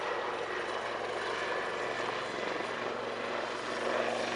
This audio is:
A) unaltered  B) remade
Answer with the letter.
A